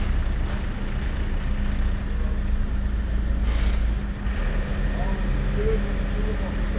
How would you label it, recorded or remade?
recorded